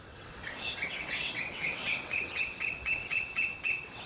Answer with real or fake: fake